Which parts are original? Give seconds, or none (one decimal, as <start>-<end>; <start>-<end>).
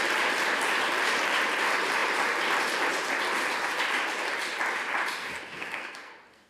0.0-5.2